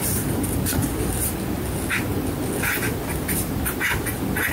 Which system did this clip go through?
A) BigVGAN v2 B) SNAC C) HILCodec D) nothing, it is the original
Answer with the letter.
D